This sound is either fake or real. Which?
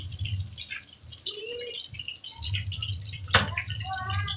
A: real